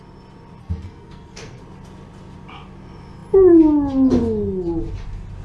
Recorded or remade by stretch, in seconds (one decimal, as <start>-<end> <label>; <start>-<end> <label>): 0.0-0.6 recorded; 0.6-1.6 remade; 1.6-5.4 recorded